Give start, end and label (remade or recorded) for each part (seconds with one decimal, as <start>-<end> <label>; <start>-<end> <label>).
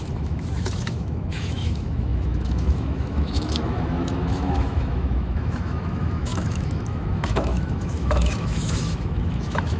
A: 0.0-9.8 remade